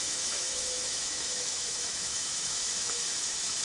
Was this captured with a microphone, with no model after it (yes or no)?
no